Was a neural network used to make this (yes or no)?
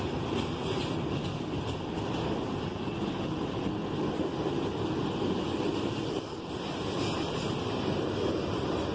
no